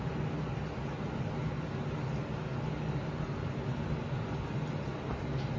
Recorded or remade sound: recorded